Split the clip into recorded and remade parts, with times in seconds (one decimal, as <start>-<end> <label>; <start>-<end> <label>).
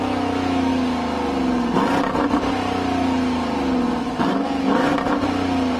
0.0-0.7 remade; 0.7-4.2 recorded; 4.2-4.9 remade; 4.9-5.8 recorded